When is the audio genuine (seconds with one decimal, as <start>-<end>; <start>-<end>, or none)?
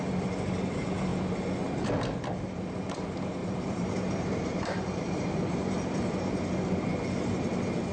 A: 0.0-3.4; 6.1-7.9